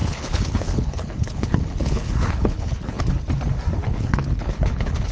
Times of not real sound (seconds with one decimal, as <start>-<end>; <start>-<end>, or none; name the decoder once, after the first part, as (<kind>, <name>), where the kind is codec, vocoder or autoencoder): 0.0-3.1 (codec, HILCodec); 3.8-5.1